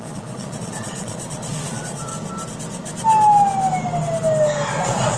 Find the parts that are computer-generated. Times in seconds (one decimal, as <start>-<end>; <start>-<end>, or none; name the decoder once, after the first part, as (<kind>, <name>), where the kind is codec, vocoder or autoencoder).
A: 0.0-2.1 (vocoder, Vocos); 4.8-5.2